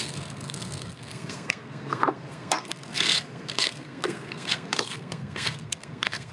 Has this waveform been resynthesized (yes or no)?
yes